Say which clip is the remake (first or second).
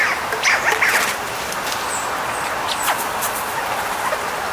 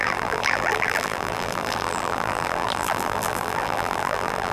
second